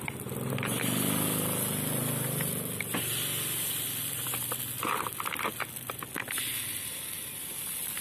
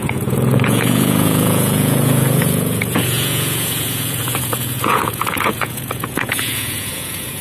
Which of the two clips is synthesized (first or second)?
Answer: second